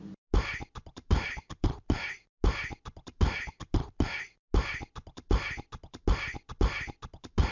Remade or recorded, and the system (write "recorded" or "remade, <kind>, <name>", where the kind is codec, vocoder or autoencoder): recorded